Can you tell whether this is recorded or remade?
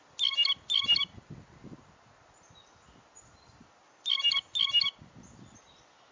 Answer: recorded